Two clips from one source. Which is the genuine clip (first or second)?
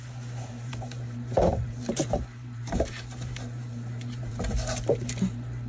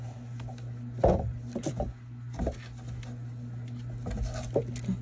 second